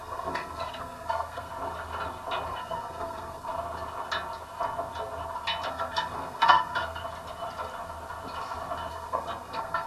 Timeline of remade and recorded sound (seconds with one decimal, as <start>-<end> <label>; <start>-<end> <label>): 0.0-1.5 remade; 1.5-2.5 recorded; 2.5-3.5 remade; 3.5-5.7 recorded; 5.7-7.0 remade; 7.0-8.9 recorded; 8.9-9.9 remade